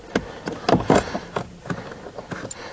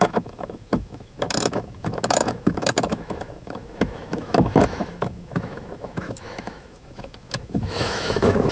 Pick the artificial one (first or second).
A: second